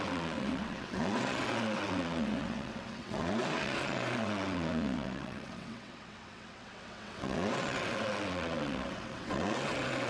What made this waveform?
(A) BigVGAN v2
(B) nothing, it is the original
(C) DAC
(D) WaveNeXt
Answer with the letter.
D